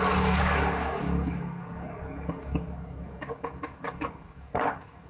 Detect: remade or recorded remade